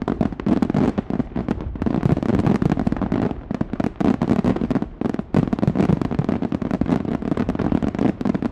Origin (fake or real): real